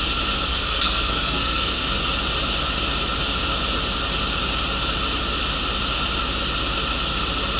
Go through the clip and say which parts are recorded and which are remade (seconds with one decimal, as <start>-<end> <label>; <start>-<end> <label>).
0.0-0.5 recorded; 0.5-1.9 remade; 1.9-7.6 recorded